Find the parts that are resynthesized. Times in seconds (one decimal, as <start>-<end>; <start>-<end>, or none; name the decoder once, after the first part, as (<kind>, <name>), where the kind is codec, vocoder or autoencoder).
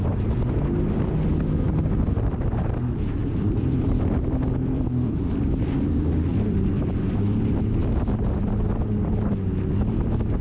3.2-5.8 (vocoder, BigVGAN v2); 6.3-7.2